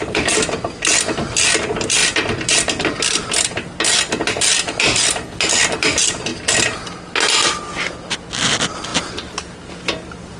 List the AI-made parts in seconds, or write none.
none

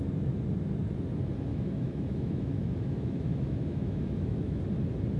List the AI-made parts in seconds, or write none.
1.5-4.6 (autoencoder, DAC-VAE)